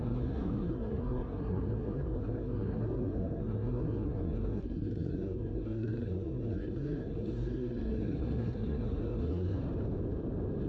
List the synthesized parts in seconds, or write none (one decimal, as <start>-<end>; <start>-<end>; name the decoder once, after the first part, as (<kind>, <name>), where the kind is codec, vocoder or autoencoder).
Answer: 0.0-9.6 (codec, SNAC)